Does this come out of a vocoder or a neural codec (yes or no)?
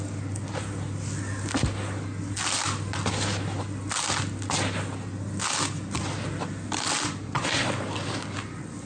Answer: no